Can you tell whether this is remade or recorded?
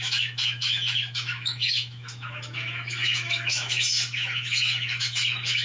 remade